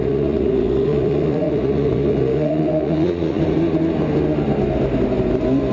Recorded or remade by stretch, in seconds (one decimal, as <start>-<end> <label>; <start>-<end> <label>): 0.0-3.4 remade; 3.4-5.7 recorded